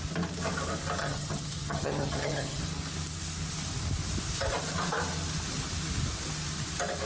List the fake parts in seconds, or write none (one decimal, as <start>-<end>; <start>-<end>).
1.0-2.6